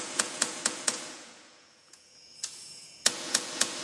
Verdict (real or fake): fake